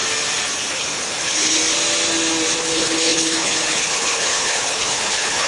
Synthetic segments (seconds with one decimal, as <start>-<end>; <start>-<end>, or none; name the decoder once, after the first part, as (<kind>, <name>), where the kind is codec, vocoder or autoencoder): 0.7-1.6 (codec, HILCodec); 2.6-5.5